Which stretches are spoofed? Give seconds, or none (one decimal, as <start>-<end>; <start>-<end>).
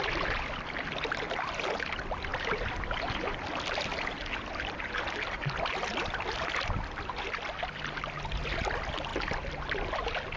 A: none